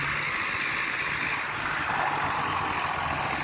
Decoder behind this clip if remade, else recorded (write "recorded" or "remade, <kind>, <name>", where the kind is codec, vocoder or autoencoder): recorded